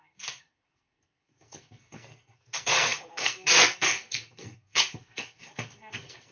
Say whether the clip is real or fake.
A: fake